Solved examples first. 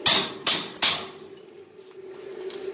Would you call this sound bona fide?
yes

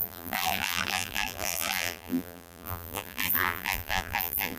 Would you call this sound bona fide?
no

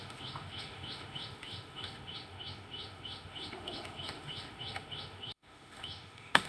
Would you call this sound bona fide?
no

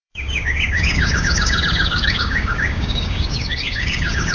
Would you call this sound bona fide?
no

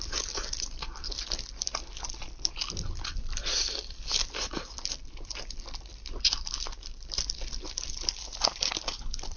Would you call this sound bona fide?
no